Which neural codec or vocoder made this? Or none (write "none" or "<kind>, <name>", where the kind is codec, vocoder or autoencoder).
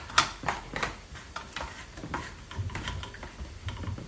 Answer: vocoder, BigVGAN v2